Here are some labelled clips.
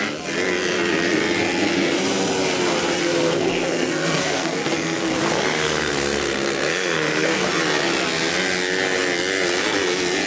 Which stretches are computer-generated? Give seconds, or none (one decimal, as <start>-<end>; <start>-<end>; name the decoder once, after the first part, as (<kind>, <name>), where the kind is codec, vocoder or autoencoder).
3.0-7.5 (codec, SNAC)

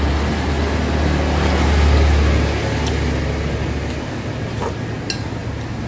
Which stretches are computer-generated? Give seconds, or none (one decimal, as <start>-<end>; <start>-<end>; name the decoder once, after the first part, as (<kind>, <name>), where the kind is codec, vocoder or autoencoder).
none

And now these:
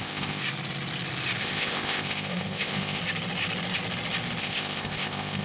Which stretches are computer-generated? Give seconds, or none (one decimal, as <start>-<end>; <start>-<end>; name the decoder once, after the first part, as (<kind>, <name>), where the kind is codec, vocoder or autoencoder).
0.0-0.4 (codec, ZipCodec); 1.4-3.0; 4.4-5.4